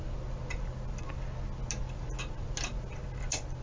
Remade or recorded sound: recorded